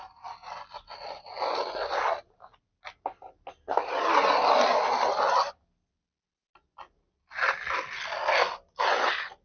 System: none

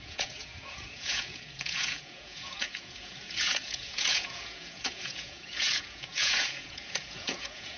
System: vocoder, Vocos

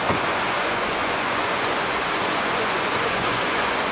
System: vocoder, Vocos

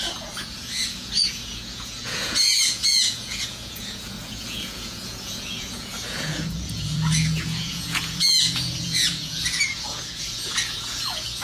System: vocoder, Vocos